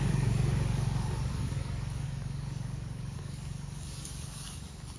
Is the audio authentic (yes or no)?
no